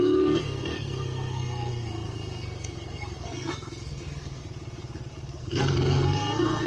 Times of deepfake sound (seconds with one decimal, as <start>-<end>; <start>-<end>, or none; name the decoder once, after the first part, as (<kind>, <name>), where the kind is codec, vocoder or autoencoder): 0.0-4.4 (codec, SNAC); 5.4-6.7